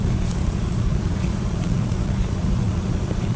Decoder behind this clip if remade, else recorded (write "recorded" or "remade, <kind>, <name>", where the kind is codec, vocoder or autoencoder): remade, vocoder, Vocos